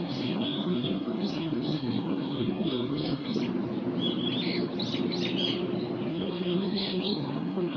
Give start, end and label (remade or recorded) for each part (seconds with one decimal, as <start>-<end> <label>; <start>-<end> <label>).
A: 0.0-3.4 remade; 3.4-6.1 recorded; 6.1-7.8 remade